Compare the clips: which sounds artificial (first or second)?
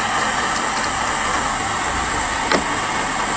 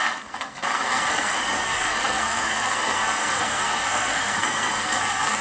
second